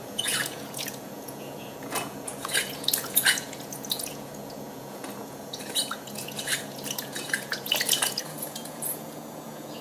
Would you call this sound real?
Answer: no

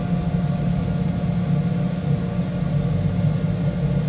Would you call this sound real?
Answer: yes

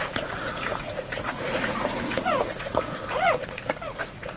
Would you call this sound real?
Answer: no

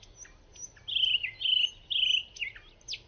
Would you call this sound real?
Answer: yes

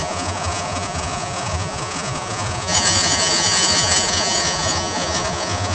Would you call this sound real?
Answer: no